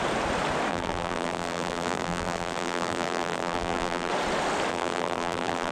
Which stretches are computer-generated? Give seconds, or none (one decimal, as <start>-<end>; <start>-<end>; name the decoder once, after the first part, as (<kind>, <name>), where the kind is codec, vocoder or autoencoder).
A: 0.7-4.1 (vocoder, BigVGAN v2); 4.7-5.7